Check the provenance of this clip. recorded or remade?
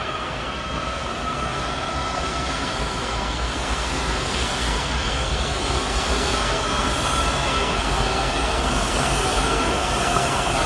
remade